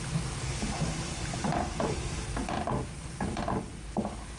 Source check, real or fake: real